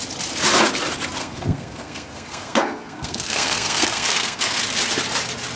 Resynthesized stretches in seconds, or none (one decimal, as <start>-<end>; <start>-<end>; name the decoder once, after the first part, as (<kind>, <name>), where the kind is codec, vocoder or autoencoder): 1.2-4.6 (codec, SNAC)